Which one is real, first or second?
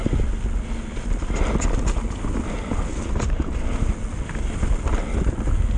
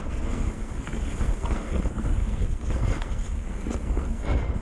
first